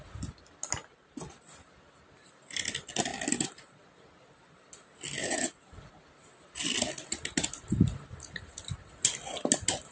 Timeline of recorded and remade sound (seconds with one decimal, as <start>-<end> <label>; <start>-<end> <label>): 0.0-5.2 recorded; 5.2-6.0 remade; 6.0-9.9 recorded